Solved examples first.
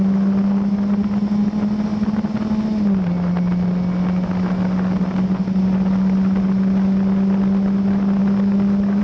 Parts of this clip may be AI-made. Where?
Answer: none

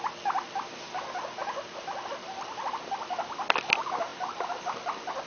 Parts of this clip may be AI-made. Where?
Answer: none

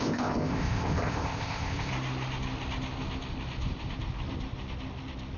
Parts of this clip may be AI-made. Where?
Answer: 0.0-1.9 (codec, ZipCodec)

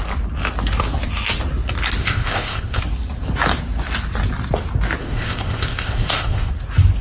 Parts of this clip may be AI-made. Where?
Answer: 2.0-2.8 (codec, ZipCodec); 5.0-6.5

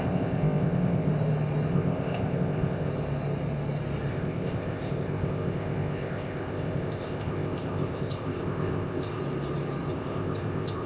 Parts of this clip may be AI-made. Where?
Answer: 0.0-1.1 (codec, ZipCodec); 1.7-2.9; 4.1-9.2; 9.9-10.9